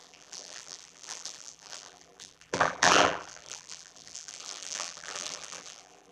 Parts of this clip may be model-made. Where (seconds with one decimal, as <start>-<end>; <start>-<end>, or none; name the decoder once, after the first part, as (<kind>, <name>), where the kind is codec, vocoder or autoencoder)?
0.0-6.1 (vocoder, BigVGAN v2)